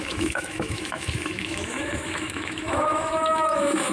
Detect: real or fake fake